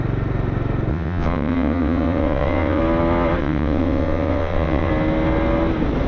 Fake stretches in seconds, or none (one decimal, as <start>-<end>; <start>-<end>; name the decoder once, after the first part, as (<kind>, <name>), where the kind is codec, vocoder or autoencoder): 0.9-2.8 (vocoder, WaveNeXt); 3.4-4.9